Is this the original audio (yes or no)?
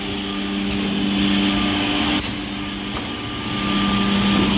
yes